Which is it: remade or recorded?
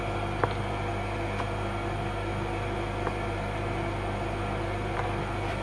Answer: recorded